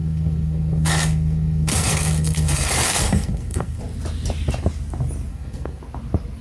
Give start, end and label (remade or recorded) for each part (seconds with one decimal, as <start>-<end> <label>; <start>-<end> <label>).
0.0-3.8 remade; 3.8-5.3 recorded; 5.3-5.8 remade; 5.8-6.4 recorded